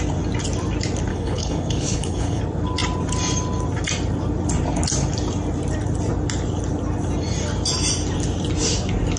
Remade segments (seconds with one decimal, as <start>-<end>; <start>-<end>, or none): 1.1-2.4